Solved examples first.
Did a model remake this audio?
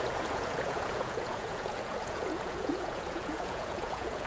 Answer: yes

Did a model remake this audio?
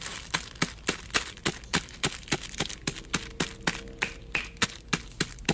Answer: no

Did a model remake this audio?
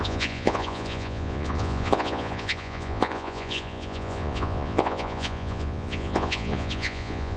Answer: yes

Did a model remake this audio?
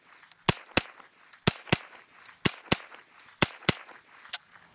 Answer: no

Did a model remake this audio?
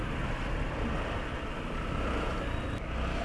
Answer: no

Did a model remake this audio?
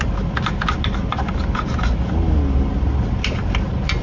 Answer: no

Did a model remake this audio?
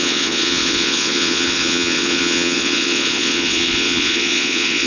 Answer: yes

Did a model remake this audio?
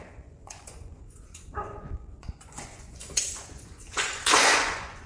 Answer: yes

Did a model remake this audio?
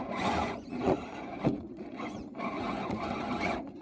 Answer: yes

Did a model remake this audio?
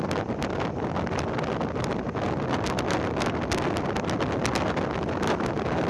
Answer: no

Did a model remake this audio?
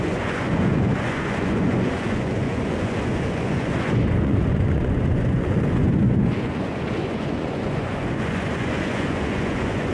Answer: yes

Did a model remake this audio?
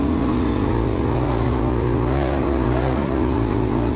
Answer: yes